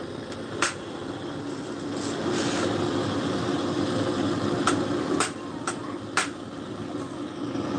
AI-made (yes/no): no